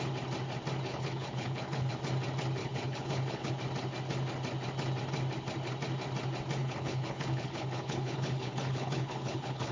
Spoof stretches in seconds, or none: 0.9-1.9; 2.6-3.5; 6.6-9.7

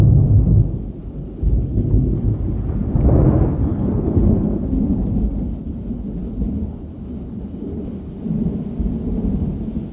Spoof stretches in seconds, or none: 1.0-1.9; 3.6-8.1

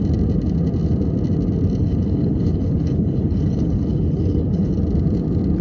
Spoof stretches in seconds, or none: 1.8-4.7

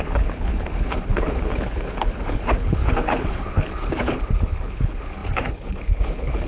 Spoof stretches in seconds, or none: 0.0-6.5

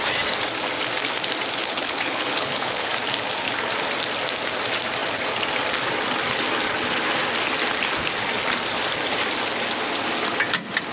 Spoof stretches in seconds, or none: 1.6-2.9

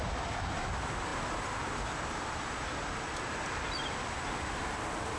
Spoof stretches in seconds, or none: none